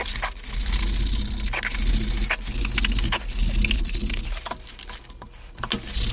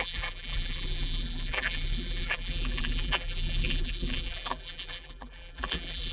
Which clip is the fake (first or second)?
second